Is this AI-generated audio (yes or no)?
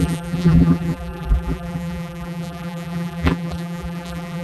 yes